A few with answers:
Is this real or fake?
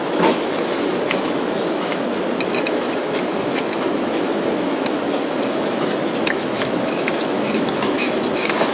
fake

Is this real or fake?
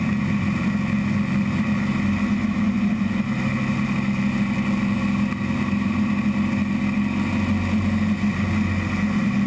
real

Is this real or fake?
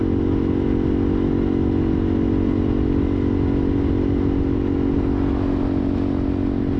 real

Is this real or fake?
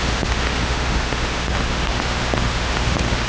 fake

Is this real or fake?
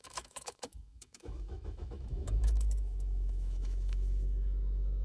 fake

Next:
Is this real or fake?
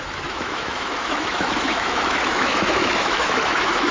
fake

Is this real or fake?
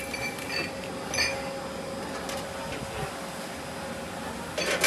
real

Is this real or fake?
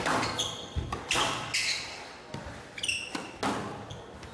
real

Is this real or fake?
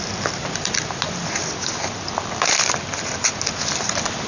real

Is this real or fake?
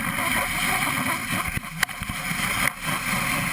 real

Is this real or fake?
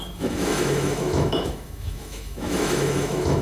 fake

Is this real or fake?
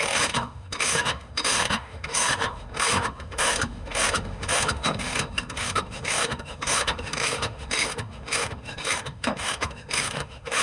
fake